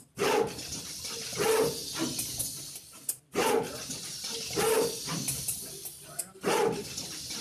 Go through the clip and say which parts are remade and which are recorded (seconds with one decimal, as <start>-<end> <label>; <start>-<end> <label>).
0.0-7.4 remade